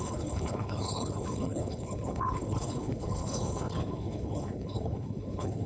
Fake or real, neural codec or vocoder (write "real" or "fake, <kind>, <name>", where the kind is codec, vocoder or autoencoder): fake, codec, HILCodec